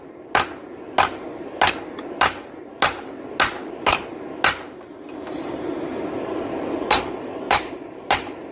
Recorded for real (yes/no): yes